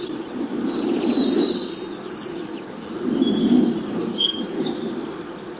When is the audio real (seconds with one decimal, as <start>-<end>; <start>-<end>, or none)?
0.0-3.9; 4.4-5.6